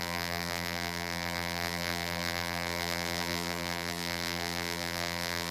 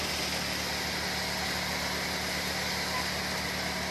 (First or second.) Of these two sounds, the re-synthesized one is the first